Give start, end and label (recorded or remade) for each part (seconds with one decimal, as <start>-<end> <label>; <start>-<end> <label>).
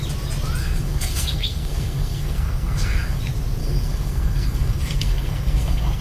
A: 0.0-0.6 recorded; 0.6-3.2 remade; 3.2-3.6 recorded; 3.6-6.0 remade